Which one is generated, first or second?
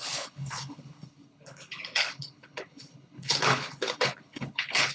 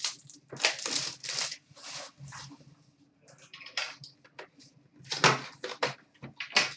first